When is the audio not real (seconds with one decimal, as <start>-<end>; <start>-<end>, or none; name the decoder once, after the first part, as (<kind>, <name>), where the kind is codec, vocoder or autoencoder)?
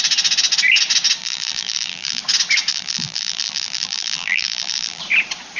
1.2-2.2 (vocoder, BigVGAN v2); 2.7-5.0